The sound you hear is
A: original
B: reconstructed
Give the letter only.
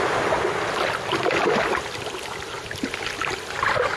A